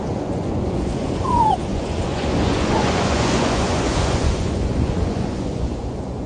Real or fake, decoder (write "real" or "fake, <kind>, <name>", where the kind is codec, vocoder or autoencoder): fake, vocoder, Vocos